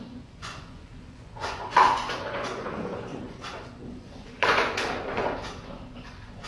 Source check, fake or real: fake